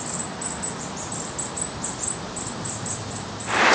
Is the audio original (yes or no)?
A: no